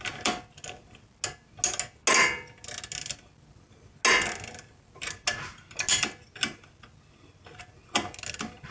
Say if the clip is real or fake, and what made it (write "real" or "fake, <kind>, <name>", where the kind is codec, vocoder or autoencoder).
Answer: real